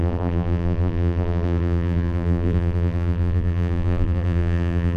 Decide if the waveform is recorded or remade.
remade